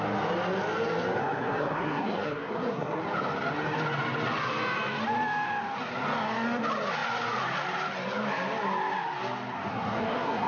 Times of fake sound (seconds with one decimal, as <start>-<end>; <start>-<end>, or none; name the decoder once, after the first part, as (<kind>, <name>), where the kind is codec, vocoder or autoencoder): 1.2-3.0 (codec, SNAC); 9.7-10.5